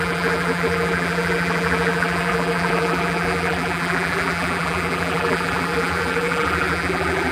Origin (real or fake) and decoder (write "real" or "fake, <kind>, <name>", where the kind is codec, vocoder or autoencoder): fake, vocoder, BigVGAN v2